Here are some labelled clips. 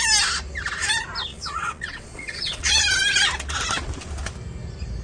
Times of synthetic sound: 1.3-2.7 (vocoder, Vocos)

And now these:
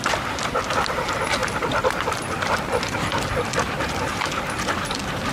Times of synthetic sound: none

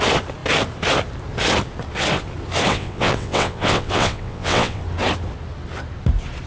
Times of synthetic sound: 2.7-4.8 (vocoder, WaveNeXt)

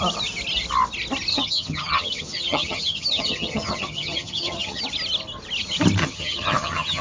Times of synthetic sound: 1.3-4.8 (vocoder, HiFi-GAN); 6.0-7.0